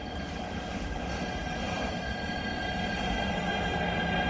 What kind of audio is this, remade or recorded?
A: recorded